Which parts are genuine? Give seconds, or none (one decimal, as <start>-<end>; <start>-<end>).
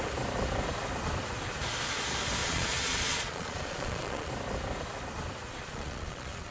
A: 0.0-2.4; 4.3-5.5